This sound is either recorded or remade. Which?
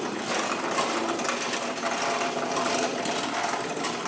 recorded